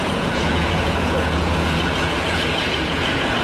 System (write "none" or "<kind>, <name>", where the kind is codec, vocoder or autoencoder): vocoder, Vocos